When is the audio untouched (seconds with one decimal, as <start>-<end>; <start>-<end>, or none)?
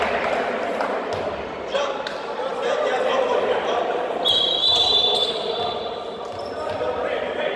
0.0-7.6